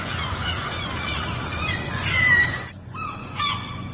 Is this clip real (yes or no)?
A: no